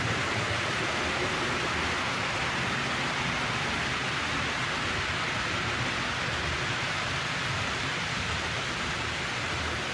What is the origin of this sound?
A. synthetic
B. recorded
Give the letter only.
B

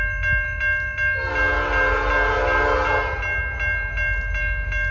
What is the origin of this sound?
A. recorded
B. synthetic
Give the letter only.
A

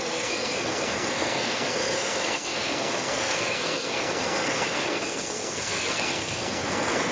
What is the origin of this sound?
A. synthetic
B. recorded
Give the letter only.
A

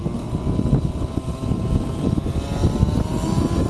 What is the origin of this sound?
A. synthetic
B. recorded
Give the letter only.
B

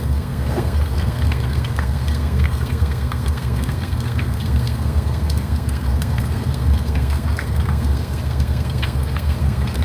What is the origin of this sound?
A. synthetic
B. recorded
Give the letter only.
A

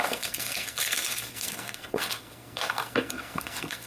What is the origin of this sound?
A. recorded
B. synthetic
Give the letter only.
B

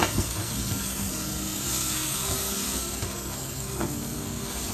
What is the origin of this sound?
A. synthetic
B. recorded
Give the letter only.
A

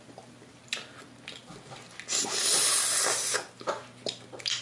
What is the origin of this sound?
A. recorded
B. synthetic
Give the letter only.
A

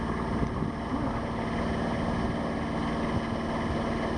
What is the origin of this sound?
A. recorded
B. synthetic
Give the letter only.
A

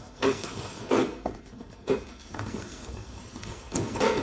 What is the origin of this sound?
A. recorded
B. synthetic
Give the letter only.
B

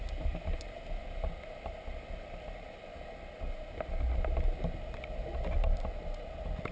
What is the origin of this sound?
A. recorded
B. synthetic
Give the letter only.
A